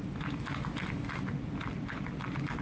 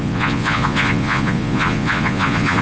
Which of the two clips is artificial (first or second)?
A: second